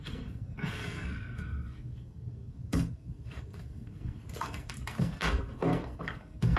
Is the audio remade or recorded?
remade